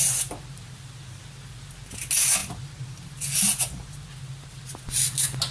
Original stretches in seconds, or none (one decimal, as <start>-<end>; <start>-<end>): 0.0-5.5

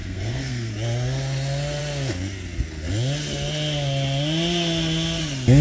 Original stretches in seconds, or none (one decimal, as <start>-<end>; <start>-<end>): 0.7-5.6

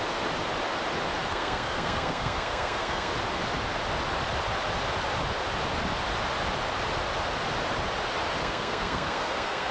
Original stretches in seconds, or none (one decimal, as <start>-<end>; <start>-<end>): 0.0-1.3; 3.1-8.4

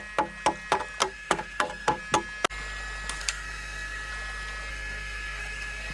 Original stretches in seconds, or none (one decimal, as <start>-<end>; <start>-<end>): 0.0-1.0; 2.0-3.2; 4.1-4.7